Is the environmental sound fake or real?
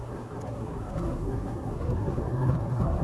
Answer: fake